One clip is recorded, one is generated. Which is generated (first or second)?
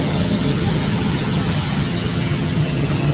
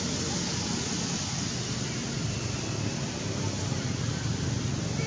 first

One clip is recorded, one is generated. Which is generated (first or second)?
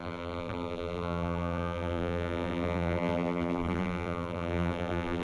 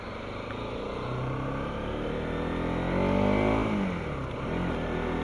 first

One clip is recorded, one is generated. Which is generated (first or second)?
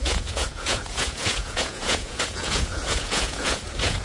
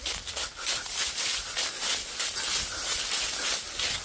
first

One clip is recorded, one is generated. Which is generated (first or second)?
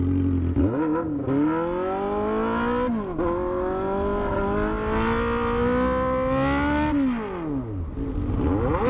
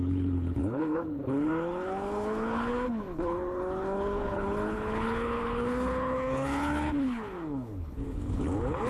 second